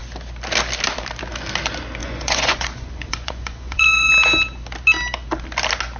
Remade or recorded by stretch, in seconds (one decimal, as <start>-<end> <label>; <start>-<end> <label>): 0.0-2.0 recorded; 2.0-4.1 remade; 4.1-6.0 recorded